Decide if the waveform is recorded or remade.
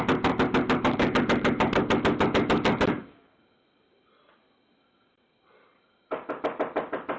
recorded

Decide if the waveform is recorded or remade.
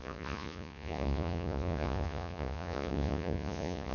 remade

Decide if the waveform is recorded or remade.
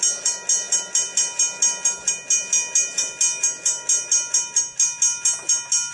recorded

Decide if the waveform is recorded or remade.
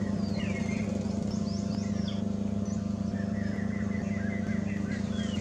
recorded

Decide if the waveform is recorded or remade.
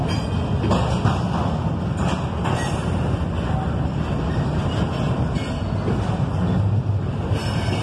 recorded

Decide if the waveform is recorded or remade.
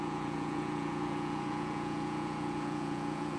remade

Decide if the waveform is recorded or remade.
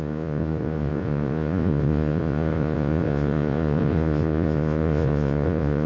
remade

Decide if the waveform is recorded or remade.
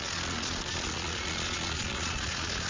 remade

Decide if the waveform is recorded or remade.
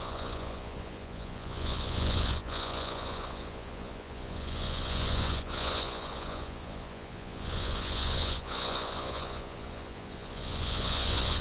remade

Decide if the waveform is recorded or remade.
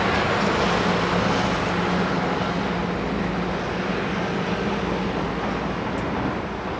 recorded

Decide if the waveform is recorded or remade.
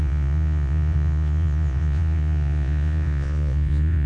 remade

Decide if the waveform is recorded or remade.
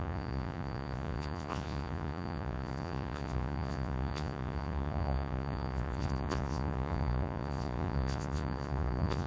remade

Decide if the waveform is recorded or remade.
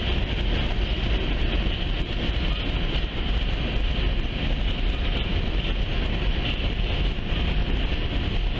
recorded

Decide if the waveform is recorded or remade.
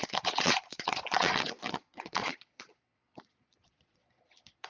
remade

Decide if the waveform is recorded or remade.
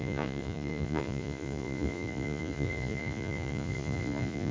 remade